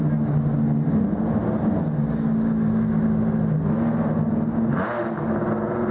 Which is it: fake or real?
real